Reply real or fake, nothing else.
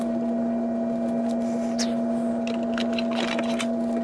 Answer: real